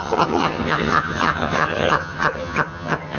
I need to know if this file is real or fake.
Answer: fake